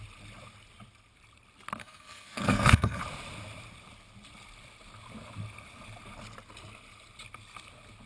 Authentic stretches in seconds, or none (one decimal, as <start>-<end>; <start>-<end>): 0.0-1.8; 3.0-8.1